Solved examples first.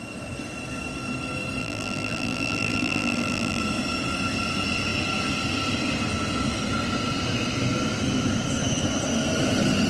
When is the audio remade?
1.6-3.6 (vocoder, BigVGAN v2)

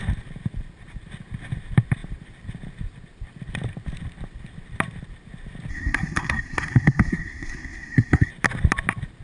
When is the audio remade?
5.7-8.3 (codec, SNAC)

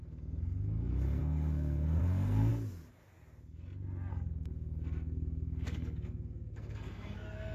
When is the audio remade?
0.0-2.5 (codec, SNAC); 4.1-7.5

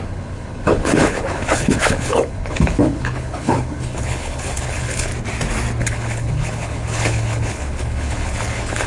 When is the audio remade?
0.0-5.1 (codec, HILCodec); 5.8-8.9

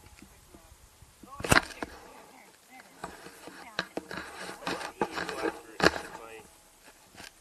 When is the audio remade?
3.0-7.0 (vocoder, BigVGAN v2)